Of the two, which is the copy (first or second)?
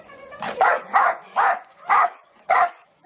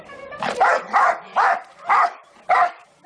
first